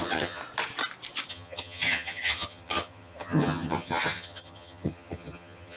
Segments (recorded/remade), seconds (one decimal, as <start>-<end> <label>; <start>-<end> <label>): 0.0-0.4 remade; 0.4-1.3 recorded; 1.3-5.8 remade